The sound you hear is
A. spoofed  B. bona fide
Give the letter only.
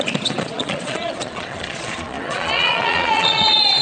A